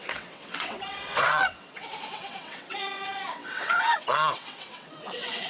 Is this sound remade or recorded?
remade